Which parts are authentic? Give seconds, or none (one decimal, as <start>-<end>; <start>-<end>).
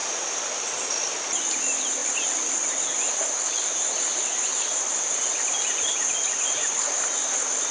0.7-2.0; 2.6-7.7